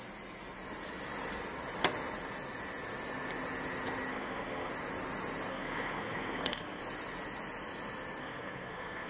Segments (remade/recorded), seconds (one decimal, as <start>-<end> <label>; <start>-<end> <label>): 0.0-4.1 recorded; 4.1-4.7 remade; 4.7-5.5 recorded; 5.5-6.8 remade; 6.8-8.2 recorded; 8.2-9.1 remade